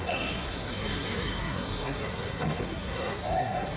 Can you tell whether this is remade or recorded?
remade